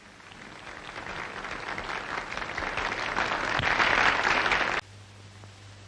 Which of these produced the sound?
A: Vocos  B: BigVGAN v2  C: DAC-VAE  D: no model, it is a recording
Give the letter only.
D